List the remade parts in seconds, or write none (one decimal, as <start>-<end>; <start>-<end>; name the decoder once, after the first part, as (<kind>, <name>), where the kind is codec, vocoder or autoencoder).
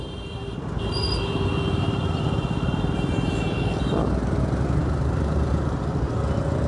4.8-5.5 (vocoder, BigVGAN v2)